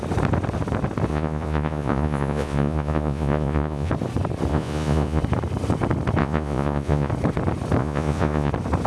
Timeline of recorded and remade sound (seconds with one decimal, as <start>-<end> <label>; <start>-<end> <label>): 0.0-1.1 recorded; 1.1-3.9 remade; 3.9-4.5 recorded; 4.5-5.2 remade; 5.2-6.2 recorded; 6.2-7.1 remade; 7.1-7.8 recorded; 7.8-8.5 remade; 8.5-8.9 recorded